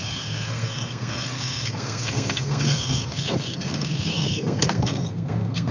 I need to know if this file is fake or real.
fake